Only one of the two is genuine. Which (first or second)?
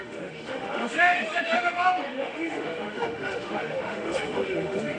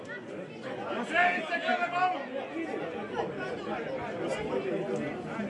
second